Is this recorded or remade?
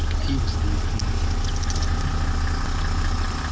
recorded